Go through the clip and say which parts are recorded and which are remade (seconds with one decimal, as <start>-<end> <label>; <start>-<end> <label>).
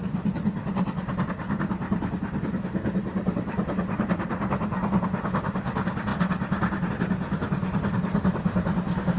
0.0-9.2 recorded